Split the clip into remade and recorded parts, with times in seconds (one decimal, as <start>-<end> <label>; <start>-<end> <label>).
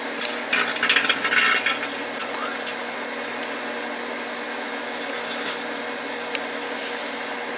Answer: 0.0-7.6 recorded